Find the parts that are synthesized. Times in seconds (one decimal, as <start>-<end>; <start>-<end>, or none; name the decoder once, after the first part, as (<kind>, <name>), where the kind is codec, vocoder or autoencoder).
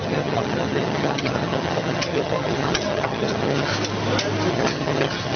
0.0-3.7 (vocoder, HiFi-GAN); 4.5-5.4